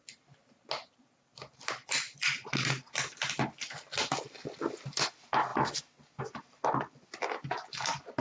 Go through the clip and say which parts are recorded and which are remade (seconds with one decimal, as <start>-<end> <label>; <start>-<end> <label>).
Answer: 0.0-8.2 recorded